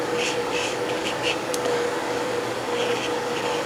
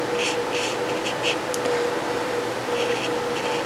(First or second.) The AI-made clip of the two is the first